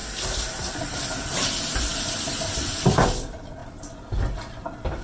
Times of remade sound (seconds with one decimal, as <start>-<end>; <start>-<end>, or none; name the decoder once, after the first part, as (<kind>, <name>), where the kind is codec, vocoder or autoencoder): 0.7-3.6 (vocoder, BigVGAN v2); 4.4-5.0